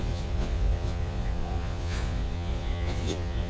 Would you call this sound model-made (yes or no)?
yes